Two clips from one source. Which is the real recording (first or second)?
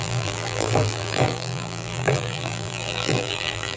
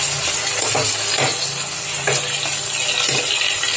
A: second